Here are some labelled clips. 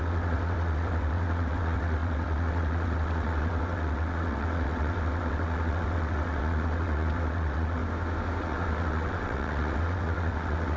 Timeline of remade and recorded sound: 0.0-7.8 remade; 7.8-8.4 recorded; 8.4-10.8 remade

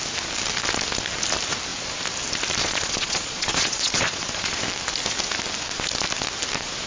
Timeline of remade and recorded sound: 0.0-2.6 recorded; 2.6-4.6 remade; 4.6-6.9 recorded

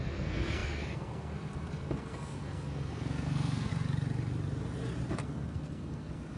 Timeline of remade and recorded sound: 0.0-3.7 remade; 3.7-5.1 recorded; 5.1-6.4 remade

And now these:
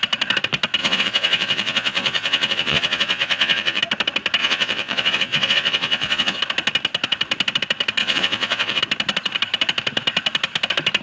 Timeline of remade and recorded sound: 0.0-0.8 recorded; 0.8-3.8 remade; 3.8-4.4 recorded; 4.4-6.4 remade; 6.4-8.0 recorded; 8.0-8.8 remade; 8.8-11.0 recorded